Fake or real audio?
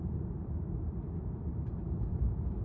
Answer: real